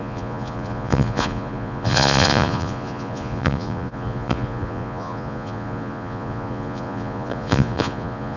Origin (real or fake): fake